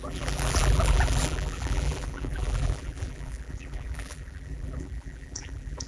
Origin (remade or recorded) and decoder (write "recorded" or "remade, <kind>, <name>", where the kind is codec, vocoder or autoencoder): remade, vocoder, BigVGAN v2